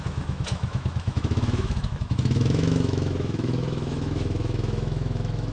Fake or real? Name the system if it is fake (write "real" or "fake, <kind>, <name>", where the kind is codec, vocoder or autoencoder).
fake, autoencoder, DAC-VAE